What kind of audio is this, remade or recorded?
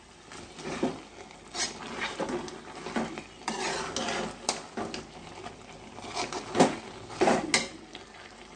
recorded